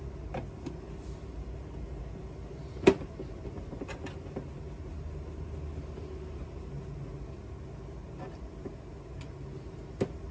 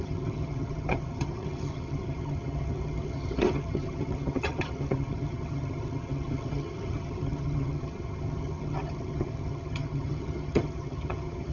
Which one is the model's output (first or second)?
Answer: second